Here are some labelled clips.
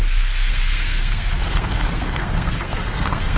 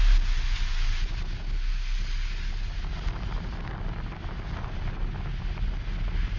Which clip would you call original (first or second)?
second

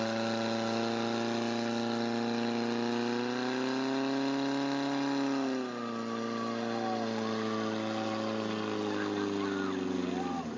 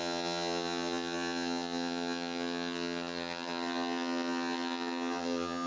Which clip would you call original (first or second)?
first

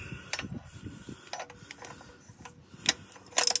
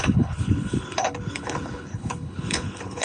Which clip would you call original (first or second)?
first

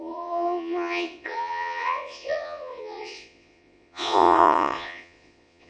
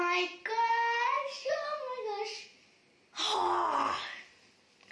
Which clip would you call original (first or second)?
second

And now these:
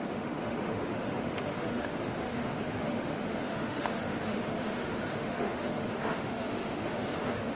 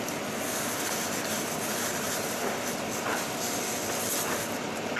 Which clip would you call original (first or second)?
second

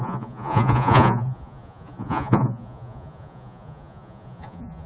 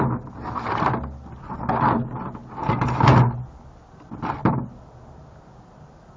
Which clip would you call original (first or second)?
second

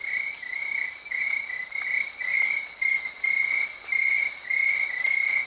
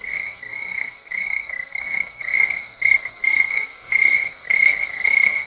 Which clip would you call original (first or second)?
first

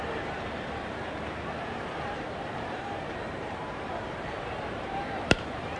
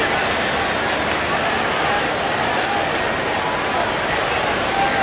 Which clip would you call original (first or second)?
second